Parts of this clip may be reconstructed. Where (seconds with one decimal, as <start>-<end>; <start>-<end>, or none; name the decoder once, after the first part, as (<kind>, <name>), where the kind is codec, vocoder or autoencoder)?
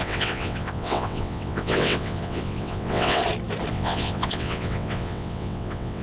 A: 0.0-3.2 (vocoder, WaveNeXt); 3.7-6.0